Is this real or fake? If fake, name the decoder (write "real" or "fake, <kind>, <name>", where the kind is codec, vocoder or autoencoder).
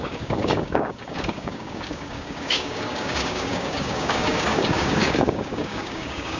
fake, codec, DAC